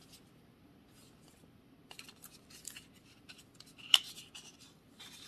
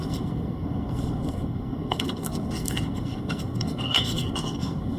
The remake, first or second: second